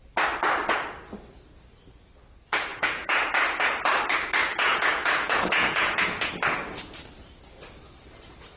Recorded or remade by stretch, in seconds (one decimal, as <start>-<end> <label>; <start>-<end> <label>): 0.0-2.7 recorded; 2.7-3.3 remade; 3.3-4.4 recorded; 4.4-6.3 remade; 6.3-8.6 recorded